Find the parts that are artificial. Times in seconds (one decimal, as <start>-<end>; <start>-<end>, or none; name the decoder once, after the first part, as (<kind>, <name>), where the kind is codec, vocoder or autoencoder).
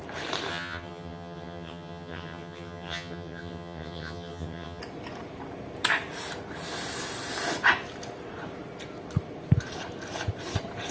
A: 0.5-4.8 (vocoder, HiFi-GAN)